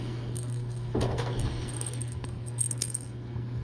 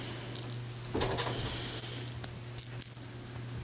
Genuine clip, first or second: second